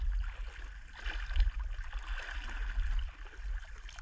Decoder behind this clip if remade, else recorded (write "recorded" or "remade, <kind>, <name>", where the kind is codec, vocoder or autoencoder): recorded